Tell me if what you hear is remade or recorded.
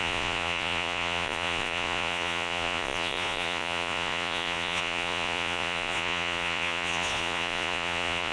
remade